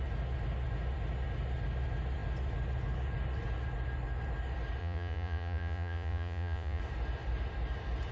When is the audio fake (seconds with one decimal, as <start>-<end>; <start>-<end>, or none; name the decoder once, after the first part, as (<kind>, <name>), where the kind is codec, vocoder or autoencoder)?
4.8-6.8 (vocoder, Vocos)